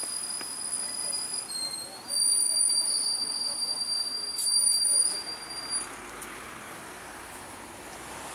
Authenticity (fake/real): real